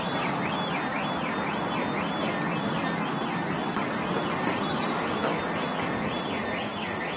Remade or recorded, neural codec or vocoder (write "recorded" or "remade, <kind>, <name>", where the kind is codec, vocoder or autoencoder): recorded